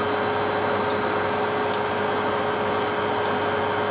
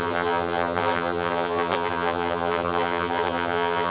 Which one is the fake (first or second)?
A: second